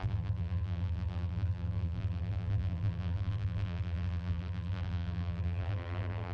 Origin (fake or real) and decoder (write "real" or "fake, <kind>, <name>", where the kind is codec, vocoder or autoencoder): fake, vocoder, BigVGAN v2